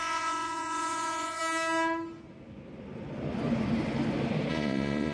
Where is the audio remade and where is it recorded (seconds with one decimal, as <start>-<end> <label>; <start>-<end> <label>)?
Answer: 0.0-1.4 remade; 1.4-4.5 recorded; 4.5-5.1 remade